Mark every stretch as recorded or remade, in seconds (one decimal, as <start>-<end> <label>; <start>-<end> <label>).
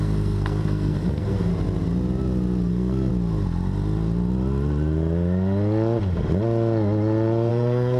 0.0-1.5 remade; 1.5-2.7 recorded; 2.7-3.1 remade; 3.1-7.5 recorded; 7.5-8.0 remade